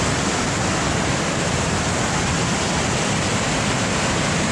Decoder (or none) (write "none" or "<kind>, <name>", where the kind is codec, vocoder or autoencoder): none